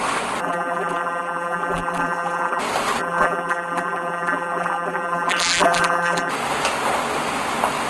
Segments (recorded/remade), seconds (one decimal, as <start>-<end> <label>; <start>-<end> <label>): 0.0-0.4 recorded; 0.4-2.6 remade; 2.6-3.0 recorded; 3.0-6.3 remade; 6.3-7.9 recorded

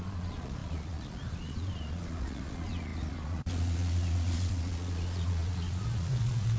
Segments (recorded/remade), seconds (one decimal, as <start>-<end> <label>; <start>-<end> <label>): 0.0-6.6 remade

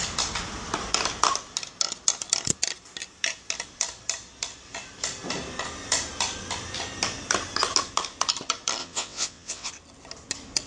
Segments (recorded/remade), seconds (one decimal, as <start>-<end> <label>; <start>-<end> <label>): 0.0-8.8 recorded; 8.8-9.7 remade; 9.7-10.7 recorded

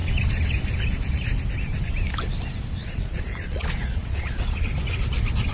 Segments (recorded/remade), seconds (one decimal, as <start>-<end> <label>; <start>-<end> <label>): 0.0-2.9 recorded; 2.9-4.7 remade; 4.7-5.5 recorded

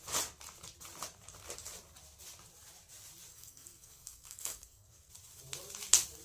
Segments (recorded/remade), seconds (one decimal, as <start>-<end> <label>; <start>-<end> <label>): 0.0-3.3 recorded; 3.3-5.1 remade; 5.1-6.2 recorded

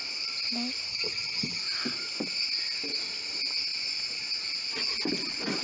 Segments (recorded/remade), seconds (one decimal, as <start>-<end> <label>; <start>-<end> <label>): 0.0-0.9 recorded; 0.9-1.6 remade; 1.6-5.6 recorded

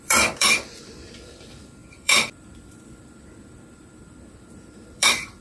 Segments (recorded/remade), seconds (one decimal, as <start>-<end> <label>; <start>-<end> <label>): 0.0-5.4 remade

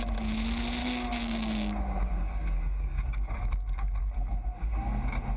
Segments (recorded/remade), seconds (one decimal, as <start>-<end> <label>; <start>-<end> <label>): 0.0-0.8 recorded; 0.8-4.0 remade; 4.0-5.4 recorded